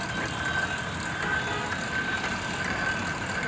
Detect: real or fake real